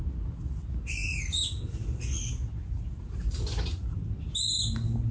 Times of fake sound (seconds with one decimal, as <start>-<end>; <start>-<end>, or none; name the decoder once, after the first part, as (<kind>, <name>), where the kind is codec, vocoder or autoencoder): none